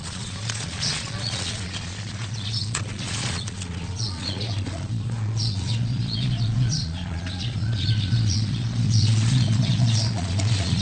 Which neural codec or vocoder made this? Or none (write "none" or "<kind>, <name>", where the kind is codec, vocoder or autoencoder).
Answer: vocoder, Vocos